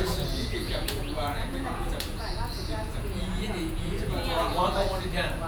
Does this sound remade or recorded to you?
remade